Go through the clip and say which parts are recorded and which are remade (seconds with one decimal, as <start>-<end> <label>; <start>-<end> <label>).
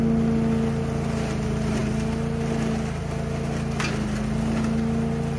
0.0-5.4 recorded